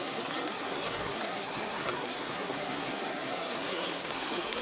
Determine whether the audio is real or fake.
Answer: fake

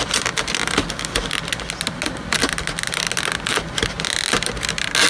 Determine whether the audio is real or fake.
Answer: real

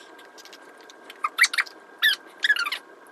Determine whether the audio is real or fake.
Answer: real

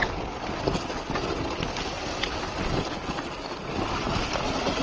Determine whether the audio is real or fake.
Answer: real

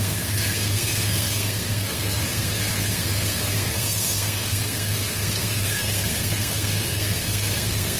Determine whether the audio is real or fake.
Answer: fake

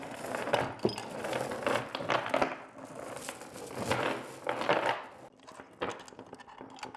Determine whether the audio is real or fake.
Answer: real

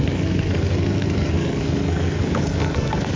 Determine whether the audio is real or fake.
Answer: fake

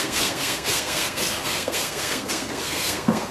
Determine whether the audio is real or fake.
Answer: fake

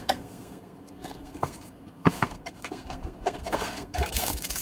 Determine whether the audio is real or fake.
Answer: fake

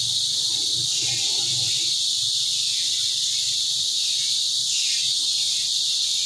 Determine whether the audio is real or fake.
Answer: real